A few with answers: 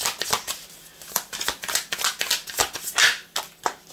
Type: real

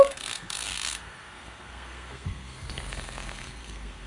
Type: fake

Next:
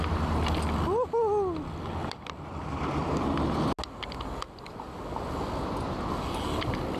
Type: real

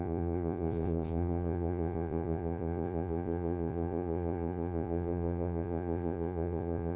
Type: fake